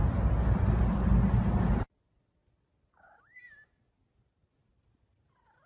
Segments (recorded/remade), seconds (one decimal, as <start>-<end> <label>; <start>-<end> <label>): 0.0-5.7 recorded